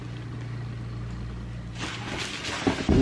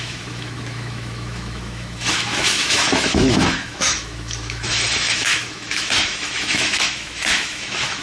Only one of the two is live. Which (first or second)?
first